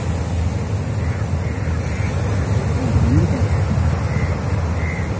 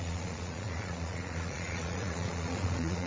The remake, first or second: second